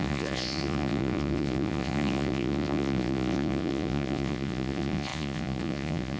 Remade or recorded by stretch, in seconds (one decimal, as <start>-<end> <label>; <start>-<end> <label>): 0.0-6.2 remade